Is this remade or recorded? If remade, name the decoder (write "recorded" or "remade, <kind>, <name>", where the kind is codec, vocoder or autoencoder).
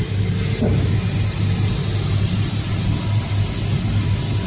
recorded